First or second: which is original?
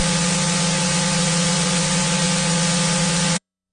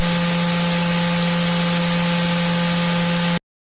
second